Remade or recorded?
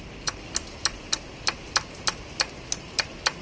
recorded